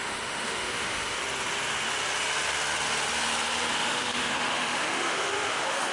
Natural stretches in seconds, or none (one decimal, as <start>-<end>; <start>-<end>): 1.2-3.7